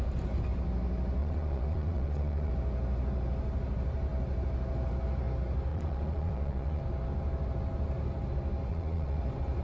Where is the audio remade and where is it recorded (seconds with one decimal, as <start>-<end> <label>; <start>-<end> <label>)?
0.0-1.2 recorded; 1.2-2.5 remade; 2.5-5.7 recorded; 5.7-6.8 remade; 6.8-8.7 recorded; 8.7-9.2 remade; 9.2-9.6 recorded